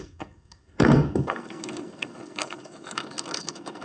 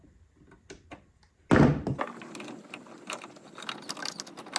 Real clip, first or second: second